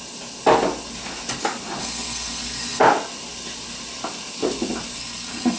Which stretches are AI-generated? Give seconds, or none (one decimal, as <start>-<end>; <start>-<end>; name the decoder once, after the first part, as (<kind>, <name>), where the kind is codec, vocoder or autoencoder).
1.8-2.8 (codec, SNAC); 5.0-5.6